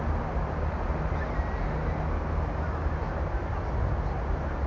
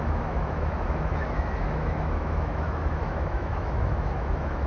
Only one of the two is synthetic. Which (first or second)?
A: second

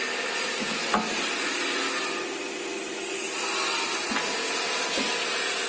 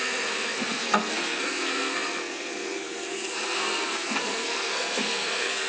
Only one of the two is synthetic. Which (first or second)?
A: second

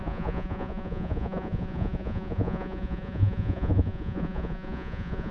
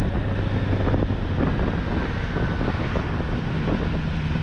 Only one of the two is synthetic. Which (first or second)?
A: first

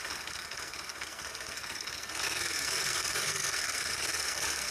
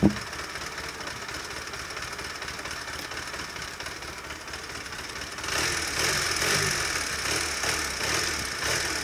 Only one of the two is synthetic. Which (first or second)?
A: first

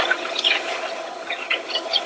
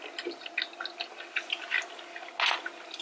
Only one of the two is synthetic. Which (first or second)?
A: first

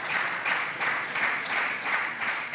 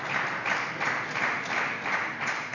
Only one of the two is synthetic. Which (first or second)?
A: first